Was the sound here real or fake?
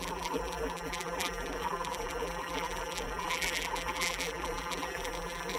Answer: fake